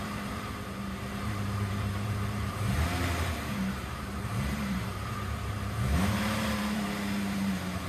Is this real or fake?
fake